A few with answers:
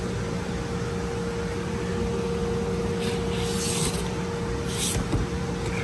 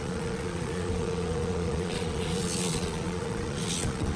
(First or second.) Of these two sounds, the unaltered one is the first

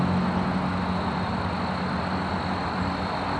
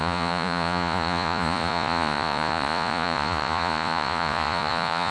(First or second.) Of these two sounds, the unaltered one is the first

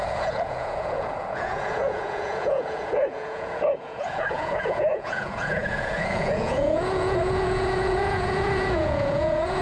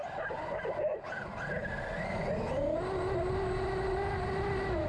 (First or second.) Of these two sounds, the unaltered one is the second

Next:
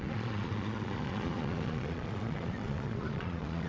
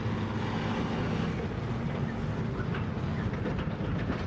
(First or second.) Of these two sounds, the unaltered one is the second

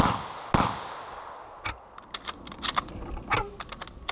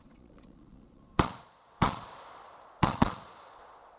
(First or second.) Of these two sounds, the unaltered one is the first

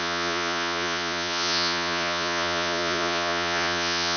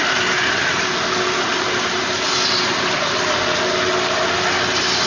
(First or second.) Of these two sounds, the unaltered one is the second